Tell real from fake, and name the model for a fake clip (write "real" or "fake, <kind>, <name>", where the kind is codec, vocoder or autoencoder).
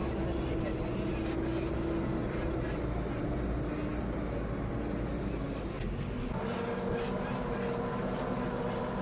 real